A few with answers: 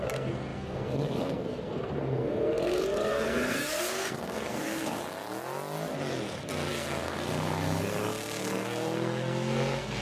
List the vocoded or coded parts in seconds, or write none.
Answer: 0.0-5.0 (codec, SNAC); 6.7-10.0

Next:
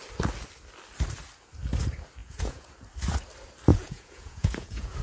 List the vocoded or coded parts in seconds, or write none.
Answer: 2.2-2.7 (vocoder, Vocos); 3.7-5.0

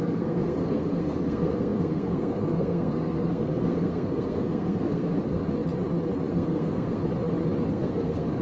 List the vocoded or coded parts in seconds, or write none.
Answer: 0.0-5.4 (codec, SNAC); 6.3-7.0; 7.7-8.4

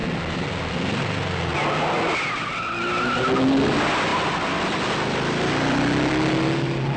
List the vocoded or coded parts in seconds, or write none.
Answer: none

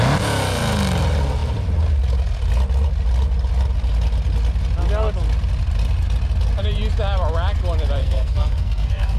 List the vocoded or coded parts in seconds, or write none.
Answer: 8.0-9.2 (codec, SNAC)

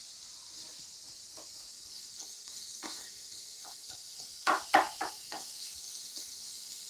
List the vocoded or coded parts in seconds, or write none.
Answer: 1.7-4.5 (codec, SNAC); 5.1-6.9